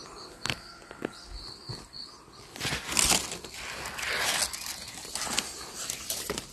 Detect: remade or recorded recorded